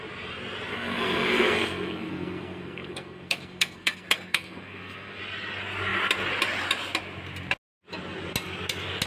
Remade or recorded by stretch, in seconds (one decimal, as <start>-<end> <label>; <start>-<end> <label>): 0.0-0.7 recorded; 0.7-5.2 remade; 5.2-9.1 recorded